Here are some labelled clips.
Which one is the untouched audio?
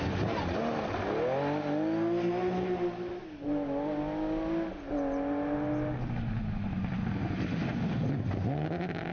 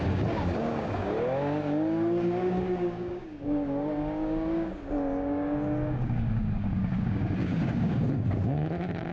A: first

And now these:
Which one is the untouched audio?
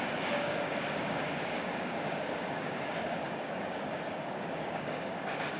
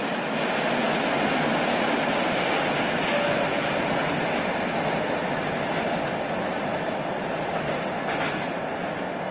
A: second